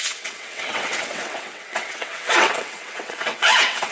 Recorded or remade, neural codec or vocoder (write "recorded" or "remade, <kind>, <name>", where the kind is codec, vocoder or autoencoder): remade, vocoder, WaveNeXt